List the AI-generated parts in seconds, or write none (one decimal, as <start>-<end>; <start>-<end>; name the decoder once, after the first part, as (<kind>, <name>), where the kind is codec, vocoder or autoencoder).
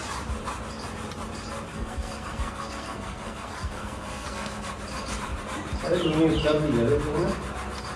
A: 1.7-4.7 (codec, SNAC)